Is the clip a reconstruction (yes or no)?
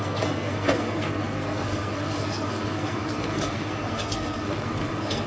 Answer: yes